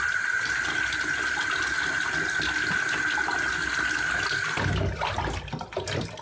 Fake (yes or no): no